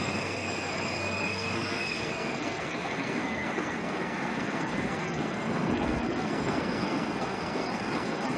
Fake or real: fake